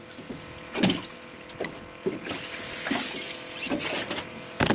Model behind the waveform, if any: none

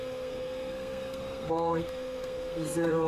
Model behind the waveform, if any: codec, SNAC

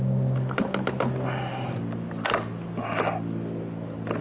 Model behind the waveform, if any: none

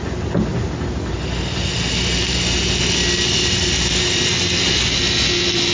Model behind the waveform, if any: none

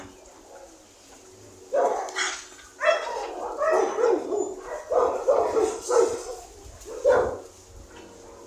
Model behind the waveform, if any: none